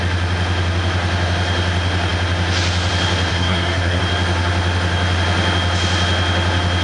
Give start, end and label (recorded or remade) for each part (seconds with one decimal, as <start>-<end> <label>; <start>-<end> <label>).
0.0-3.3 recorded; 3.3-4.0 remade; 4.0-6.8 recorded